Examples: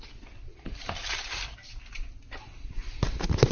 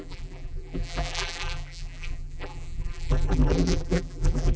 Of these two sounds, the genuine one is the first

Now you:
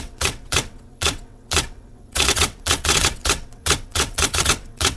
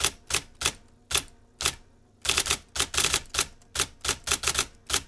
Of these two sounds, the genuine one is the second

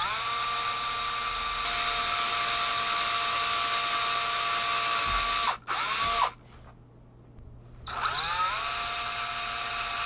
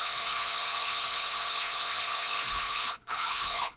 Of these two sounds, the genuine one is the first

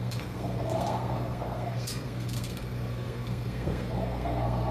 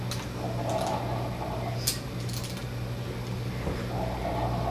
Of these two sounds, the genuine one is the second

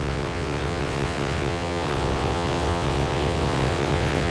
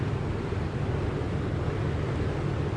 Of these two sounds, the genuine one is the second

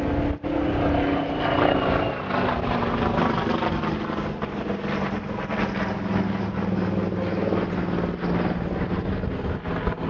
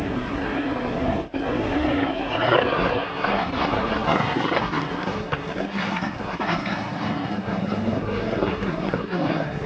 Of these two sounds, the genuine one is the first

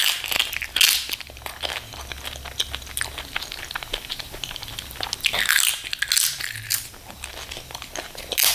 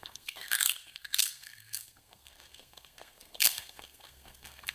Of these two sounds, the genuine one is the first